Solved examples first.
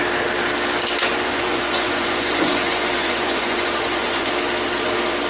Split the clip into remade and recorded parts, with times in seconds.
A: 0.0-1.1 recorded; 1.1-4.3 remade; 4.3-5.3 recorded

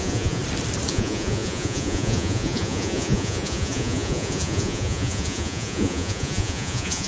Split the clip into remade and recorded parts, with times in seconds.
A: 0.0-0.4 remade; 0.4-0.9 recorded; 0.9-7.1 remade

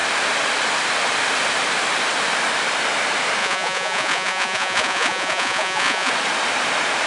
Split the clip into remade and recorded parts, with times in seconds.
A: 0.0-3.4 recorded; 3.4-6.1 remade; 6.1-7.1 recorded

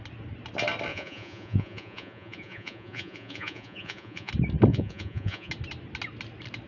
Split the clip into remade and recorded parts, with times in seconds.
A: 0.0-0.9 recorded; 0.9-4.3 remade; 4.3-4.7 recorded; 4.7-5.5 remade; 5.5-6.7 recorded